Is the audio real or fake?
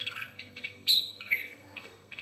fake